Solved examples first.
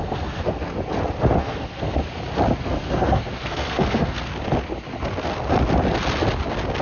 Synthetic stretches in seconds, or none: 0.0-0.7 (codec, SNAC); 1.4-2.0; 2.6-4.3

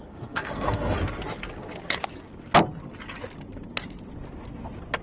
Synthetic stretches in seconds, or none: 0.0-1.0 (codec, SNAC)